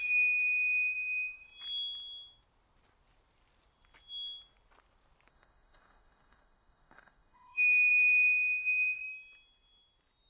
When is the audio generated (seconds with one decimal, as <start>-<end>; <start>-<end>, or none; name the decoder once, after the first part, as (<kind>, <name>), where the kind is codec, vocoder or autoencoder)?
0.0-1.4 (autoencoder, DAC-VAE); 5.3-9.0